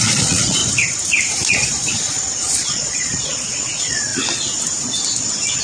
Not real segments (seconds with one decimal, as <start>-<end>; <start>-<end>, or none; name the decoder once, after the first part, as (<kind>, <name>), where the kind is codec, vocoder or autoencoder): 0.0-0.6 (vocoder, Vocos); 1.5-4.1